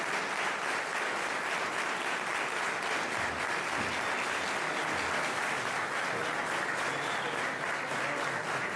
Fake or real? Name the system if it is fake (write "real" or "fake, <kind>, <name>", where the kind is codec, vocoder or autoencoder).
real